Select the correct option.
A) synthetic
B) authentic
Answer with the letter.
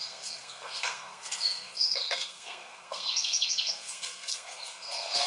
A